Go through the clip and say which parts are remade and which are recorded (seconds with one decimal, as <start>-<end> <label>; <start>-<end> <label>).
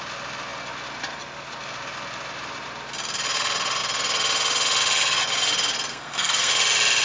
0.0-5.9 recorded; 5.9-6.5 remade; 6.5-7.0 recorded